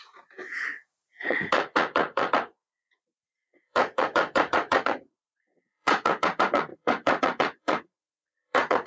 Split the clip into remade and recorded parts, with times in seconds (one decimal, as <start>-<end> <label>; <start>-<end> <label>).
0.0-8.9 remade